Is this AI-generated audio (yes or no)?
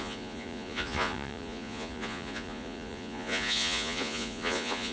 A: yes